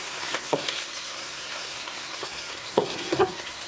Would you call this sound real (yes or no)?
no